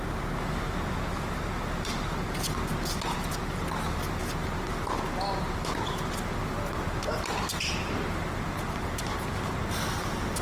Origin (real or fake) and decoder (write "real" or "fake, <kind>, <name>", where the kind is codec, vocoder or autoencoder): real